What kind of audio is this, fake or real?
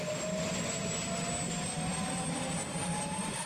real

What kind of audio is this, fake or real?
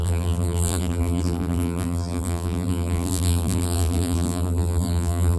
fake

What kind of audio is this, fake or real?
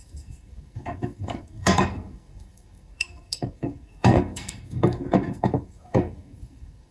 fake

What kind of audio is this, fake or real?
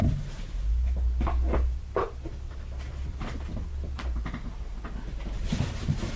real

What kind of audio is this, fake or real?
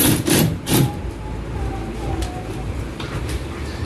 fake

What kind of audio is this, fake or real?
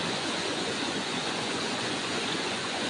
fake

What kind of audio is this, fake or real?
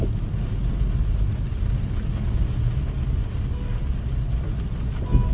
real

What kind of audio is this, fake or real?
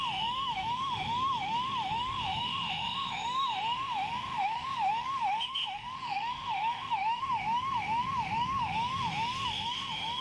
fake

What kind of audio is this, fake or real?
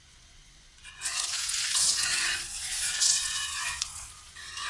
fake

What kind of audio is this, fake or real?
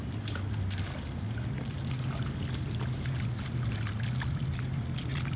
real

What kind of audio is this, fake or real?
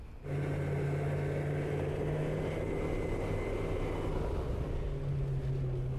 real